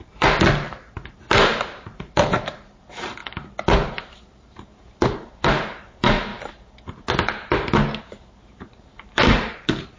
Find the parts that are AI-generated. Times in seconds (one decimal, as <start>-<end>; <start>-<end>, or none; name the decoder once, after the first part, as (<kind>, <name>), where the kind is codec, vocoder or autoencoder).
0.0-6.3 (vocoder, BigVGAN v2); 8.0-10.0